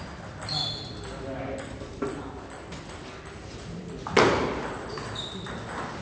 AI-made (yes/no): no